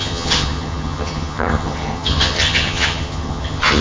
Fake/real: fake